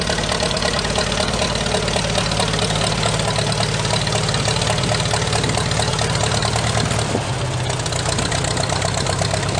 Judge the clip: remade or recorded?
recorded